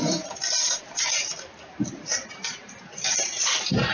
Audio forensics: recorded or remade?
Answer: remade